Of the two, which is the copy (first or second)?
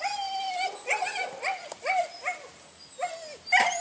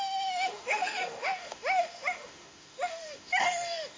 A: second